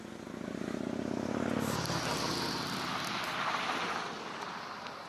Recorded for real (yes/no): yes